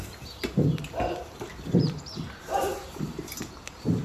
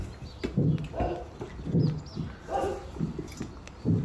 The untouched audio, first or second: second